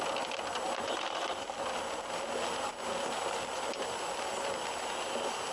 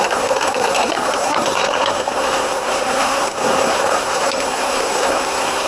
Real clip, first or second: first